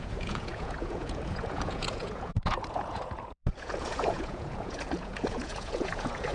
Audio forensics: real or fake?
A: fake